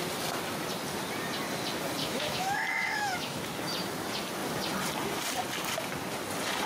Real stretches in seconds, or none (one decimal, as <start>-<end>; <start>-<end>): 0.0-2.0; 3.4-6.7